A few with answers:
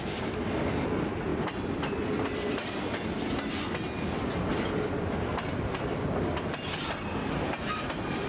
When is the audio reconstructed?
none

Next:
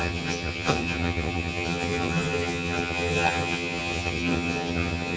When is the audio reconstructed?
0.0-5.2 (vocoder, HiFi-GAN)

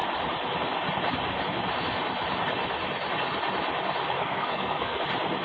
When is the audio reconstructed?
4.2-5.0 (codec, SNAC)